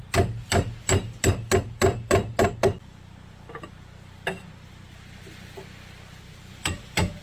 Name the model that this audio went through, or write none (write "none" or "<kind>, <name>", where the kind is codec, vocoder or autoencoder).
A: none